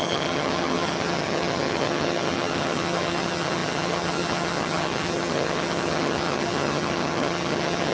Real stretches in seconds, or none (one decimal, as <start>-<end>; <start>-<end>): none